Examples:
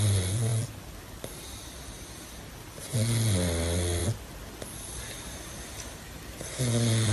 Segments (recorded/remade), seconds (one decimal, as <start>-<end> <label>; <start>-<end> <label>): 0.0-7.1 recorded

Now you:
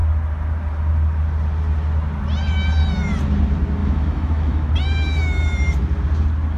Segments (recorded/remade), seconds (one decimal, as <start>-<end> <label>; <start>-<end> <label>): 0.0-3.8 recorded; 3.8-4.7 remade; 4.7-6.6 recorded

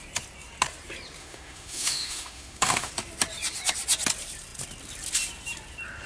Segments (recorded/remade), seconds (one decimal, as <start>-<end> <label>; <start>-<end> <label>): 0.0-1.2 recorded; 1.2-2.9 remade; 2.9-6.1 recorded

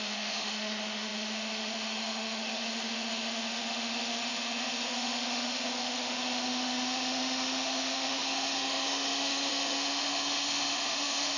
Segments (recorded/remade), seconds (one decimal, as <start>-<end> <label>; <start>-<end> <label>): 0.0-11.4 remade